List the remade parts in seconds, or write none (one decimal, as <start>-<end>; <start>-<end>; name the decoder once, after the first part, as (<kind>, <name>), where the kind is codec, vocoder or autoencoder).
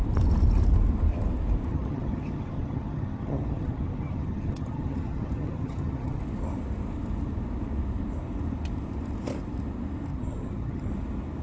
1.7-6.2 (vocoder, HiFi-GAN); 10.1-10.9